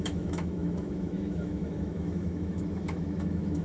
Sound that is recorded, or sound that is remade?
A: remade